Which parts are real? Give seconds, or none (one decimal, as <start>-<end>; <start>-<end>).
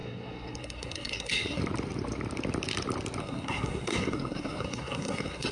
1.6-3.2